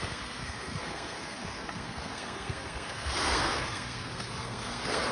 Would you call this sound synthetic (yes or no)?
yes